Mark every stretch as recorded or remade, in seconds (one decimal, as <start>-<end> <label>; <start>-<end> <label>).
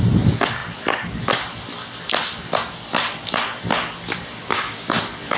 0.0-4.4 recorded; 4.4-5.0 remade; 5.0-5.4 recorded